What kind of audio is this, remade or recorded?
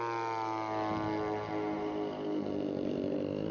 recorded